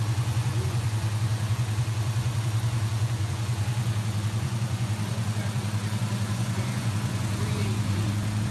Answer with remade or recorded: remade